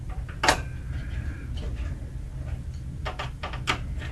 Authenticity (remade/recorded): recorded